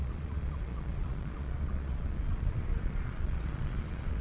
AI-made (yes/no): yes